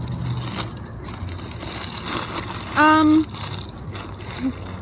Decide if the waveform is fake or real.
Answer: real